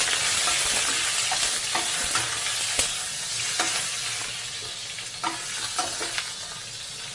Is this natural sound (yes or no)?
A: yes